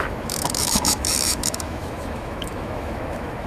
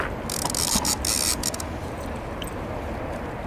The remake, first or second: first